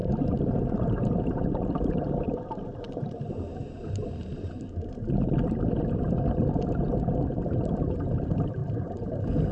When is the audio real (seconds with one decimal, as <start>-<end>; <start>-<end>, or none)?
5.1-8.6; 9.1-9.5